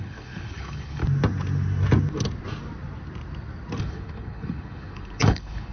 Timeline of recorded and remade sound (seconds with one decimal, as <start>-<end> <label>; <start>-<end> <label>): 0.0-1.0 remade; 1.0-3.8 recorded; 3.8-5.7 remade